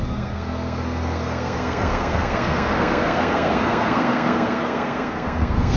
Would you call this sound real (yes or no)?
no